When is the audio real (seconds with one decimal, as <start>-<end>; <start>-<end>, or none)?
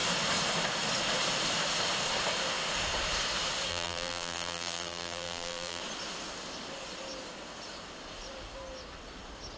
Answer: 0.0-3.7; 5.8-9.6